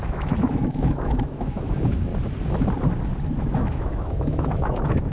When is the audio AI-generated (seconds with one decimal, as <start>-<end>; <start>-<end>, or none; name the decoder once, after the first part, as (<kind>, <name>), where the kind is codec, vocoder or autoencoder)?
0.0-2.1 (autoencoder, DAC-VAE); 3.4-5.1

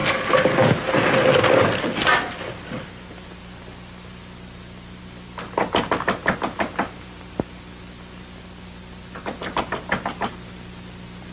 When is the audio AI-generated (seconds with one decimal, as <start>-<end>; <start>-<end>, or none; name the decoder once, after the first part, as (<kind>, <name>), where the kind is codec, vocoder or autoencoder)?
none

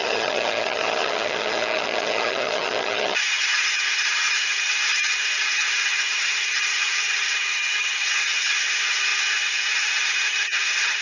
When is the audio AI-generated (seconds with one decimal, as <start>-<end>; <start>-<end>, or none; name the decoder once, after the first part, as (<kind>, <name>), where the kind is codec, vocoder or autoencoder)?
0.0-11.0 (vocoder, HiFi-GAN)

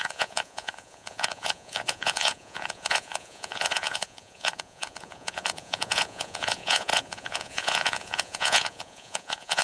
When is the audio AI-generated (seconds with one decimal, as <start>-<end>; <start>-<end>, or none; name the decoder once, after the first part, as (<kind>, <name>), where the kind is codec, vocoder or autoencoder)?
0.0-9.6 (vocoder, Vocos)

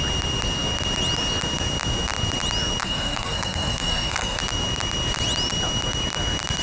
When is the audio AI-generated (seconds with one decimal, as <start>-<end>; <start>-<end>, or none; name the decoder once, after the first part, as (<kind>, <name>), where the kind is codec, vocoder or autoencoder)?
2.8-4.4 (codec, SNAC)

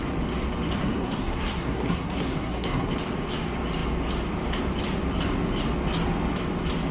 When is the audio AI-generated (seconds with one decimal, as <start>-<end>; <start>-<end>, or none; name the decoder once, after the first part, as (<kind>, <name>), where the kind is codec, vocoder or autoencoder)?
0.8-2.9 (codec, SNAC)